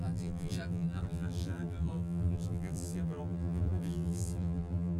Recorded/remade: remade